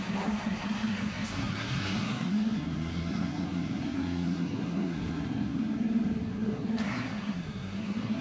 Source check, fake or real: fake